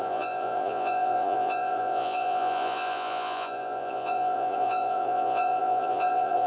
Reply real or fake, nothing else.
fake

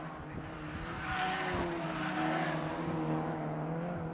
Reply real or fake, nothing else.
real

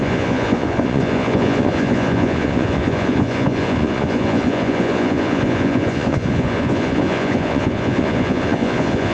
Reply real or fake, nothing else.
fake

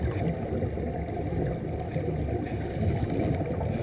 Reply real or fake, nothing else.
real